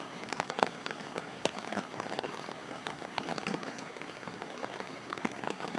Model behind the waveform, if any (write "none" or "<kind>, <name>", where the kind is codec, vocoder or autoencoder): codec, SNAC